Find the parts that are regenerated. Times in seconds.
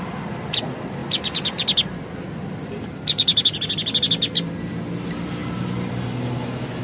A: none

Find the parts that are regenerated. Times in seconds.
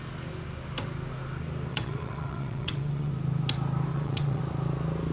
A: 1.7-3.1; 3.9-4.4